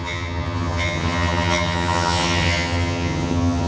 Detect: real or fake fake